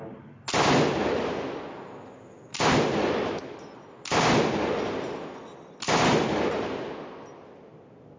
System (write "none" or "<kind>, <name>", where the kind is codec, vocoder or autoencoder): none